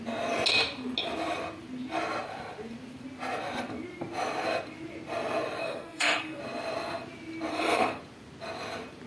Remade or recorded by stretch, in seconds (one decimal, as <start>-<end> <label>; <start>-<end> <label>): 0.0-5.6 recorded; 5.6-6.4 remade; 6.4-7.5 recorded; 7.5-8.0 remade; 8.0-9.1 recorded